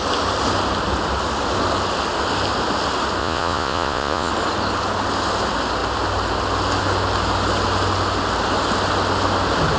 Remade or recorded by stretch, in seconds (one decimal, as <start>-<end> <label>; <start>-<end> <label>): 0.0-3.2 recorded; 3.2-4.3 remade; 4.3-9.8 recorded